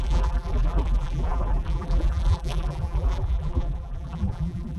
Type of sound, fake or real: fake